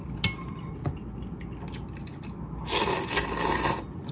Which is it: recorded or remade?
recorded